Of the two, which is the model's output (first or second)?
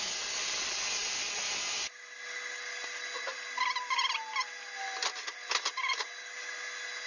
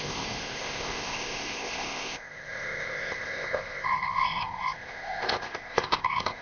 second